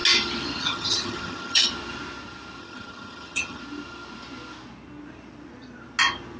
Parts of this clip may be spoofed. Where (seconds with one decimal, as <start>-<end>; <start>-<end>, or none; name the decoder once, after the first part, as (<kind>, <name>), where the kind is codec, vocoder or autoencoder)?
0.6-1.7 (vocoder, HiFi-GAN); 2.6-3.6

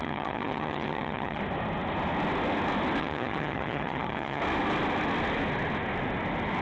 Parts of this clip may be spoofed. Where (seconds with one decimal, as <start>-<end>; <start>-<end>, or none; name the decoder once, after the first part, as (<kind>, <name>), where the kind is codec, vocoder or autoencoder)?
0.0-1.4 (vocoder, HiFi-GAN); 3.0-4.4

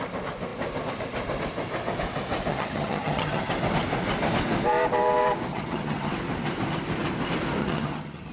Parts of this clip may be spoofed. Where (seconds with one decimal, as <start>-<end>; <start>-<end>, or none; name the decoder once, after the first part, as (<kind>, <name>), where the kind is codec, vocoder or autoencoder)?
2.5-3.5 (vocoder, HiFi-GAN); 5.5-6.1; 7.6-8.3

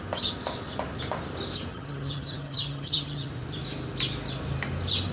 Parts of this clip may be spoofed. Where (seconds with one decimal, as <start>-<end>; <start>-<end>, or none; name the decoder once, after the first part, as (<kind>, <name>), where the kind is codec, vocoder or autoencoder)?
1.7-3.3 (vocoder, HiFi-GAN)

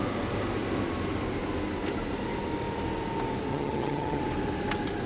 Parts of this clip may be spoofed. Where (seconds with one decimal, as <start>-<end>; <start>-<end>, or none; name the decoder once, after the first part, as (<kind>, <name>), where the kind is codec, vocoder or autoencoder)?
3.5-4.2 (vocoder, HiFi-GAN)

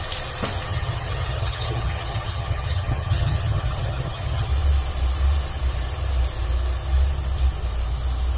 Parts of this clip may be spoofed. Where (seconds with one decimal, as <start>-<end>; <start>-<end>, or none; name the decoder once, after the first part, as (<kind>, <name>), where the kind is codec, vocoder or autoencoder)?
0.7-4.5 (vocoder, HiFi-GAN)